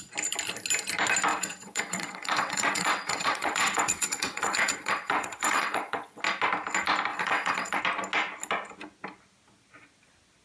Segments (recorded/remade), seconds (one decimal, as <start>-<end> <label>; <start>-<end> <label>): 0.0-1.3 recorded; 1.3-6.2 remade; 6.2-7.1 recorded; 7.1-7.8 remade; 7.8-10.4 recorded